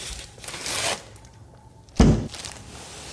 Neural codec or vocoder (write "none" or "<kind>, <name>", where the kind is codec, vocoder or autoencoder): none